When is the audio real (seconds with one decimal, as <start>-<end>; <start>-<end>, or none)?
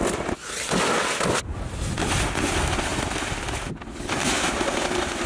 0.0-5.3